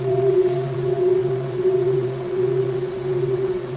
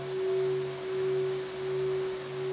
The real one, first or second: second